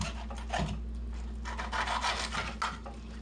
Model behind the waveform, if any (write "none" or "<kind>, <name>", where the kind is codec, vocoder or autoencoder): none